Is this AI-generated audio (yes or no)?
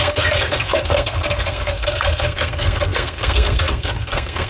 yes